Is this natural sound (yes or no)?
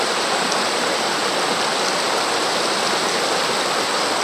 yes